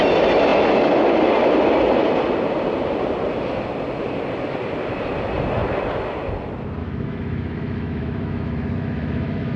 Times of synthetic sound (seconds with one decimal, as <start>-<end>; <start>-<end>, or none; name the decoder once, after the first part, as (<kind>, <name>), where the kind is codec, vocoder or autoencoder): 6.8-9.6 (autoencoder, DAC-VAE)